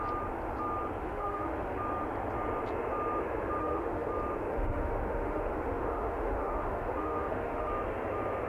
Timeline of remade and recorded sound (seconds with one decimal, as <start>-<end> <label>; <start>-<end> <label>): 0.0-1.0 recorded; 1.0-1.8 remade; 1.8-3.6 recorded; 3.6-4.1 remade; 4.1-4.5 recorded; 4.5-7.7 remade; 7.7-8.5 recorded